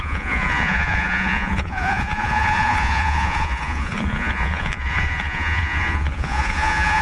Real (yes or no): no